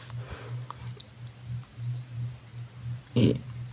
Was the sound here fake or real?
real